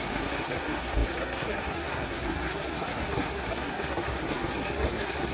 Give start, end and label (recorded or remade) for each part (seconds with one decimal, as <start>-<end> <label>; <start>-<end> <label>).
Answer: 0.0-5.3 remade